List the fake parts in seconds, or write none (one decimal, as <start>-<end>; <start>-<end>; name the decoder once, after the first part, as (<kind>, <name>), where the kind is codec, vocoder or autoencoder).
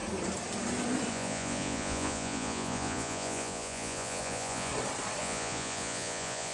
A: 1.1-4.7 (vocoder, Vocos); 5.2-6.5